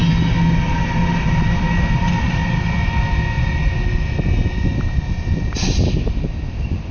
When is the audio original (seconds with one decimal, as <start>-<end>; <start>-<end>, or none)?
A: 0.0-1.2; 2.4-6.5